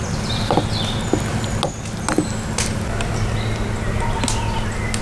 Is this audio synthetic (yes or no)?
no